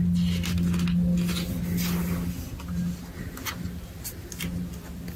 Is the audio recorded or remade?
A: recorded